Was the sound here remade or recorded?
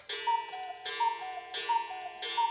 recorded